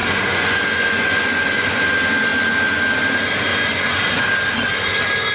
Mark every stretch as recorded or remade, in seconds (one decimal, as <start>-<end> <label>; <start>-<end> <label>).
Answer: 0.0-1.8 remade; 1.8-3.5 recorded; 3.5-4.2 remade; 4.2-5.3 recorded